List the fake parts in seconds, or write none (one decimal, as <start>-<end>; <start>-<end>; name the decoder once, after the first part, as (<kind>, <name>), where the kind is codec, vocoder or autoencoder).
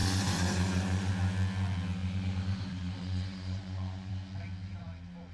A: 0.0-1.1 (vocoder, Vocos); 2.0-4.1